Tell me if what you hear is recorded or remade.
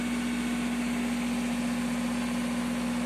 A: recorded